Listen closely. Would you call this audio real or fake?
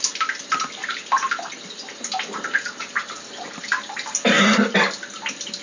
real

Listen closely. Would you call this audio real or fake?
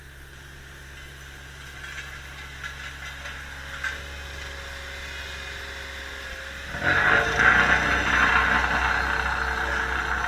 real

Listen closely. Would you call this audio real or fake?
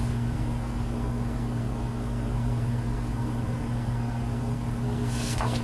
fake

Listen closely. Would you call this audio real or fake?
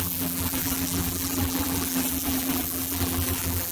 fake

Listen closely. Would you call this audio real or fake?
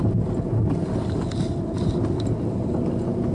real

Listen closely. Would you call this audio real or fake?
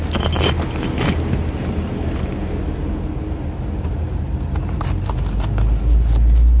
real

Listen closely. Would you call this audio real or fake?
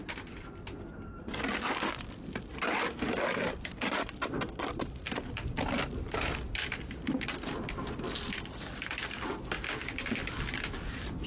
fake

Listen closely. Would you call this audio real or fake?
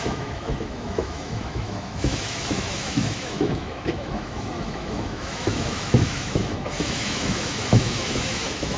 fake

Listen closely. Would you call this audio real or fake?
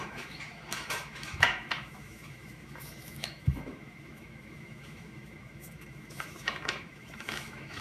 fake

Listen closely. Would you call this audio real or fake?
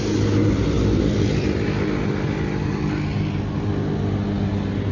real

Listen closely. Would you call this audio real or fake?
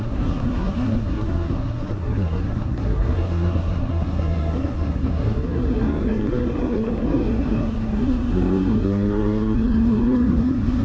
fake